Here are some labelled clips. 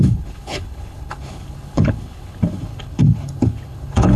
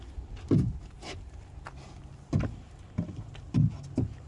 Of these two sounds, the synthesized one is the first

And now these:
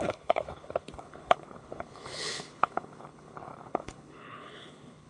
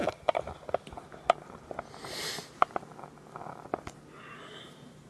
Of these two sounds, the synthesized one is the first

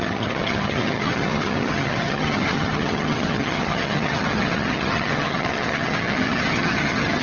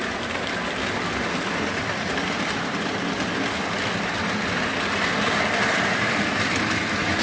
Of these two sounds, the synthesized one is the first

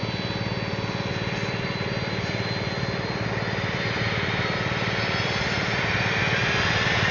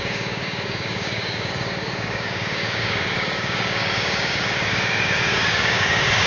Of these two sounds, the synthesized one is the second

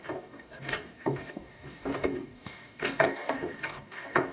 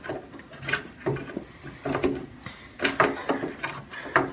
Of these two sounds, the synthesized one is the first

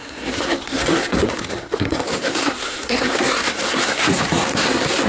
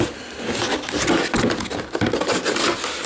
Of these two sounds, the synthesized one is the first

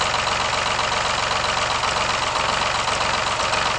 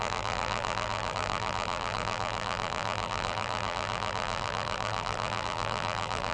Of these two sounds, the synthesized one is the second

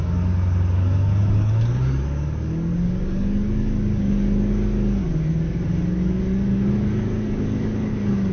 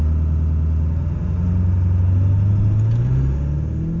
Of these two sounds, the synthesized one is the first